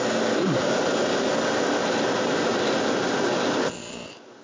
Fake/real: real